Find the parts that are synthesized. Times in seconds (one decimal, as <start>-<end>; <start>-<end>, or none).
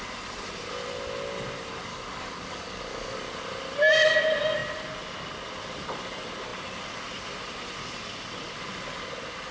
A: 1.9-3.2